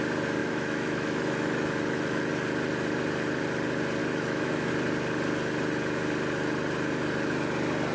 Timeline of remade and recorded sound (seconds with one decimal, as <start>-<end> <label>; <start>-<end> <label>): 0.0-0.4 recorded; 0.4-2.3 remade; 2.3-4.0 recorded; 4.0-4.7 remade; 4.7-7.9 recorded